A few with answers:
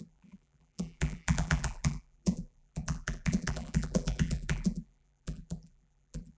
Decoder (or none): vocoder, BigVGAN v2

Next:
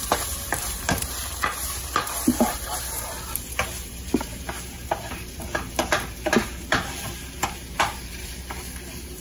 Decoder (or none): vocoder, BigVGAN v2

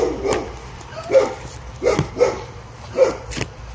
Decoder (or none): vocoder, BigVGAN v2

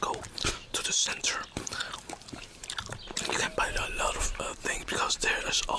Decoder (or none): vocoder, BigVGAN v2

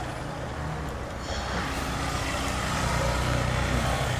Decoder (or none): none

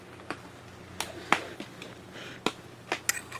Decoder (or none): none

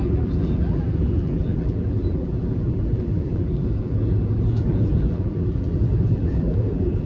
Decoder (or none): vocoder, BigVGAN v2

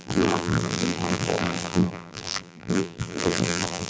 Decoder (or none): vocoder, BigVGAN v2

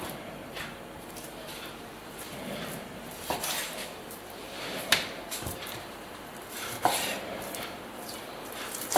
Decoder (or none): vocoder, BigVGAN v2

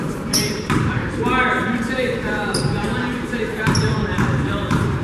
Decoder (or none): vocoder, BigVGAN v2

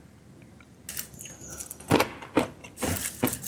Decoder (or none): none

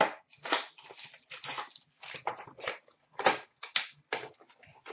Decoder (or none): vocoder, BigVGAN v2